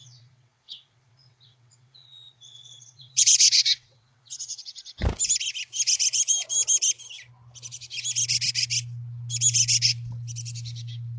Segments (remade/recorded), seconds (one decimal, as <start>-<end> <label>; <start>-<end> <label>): 0.0-4.6 remade; 4.6-11.2 recorded